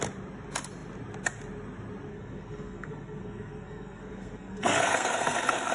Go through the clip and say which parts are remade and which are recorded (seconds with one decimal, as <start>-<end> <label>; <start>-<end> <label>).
0.0-2.1 recorded; 2.1-5.7 remade